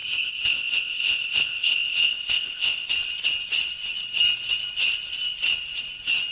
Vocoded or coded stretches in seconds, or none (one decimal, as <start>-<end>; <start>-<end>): 0.0-2.9